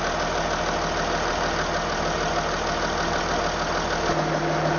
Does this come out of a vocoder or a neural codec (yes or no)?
no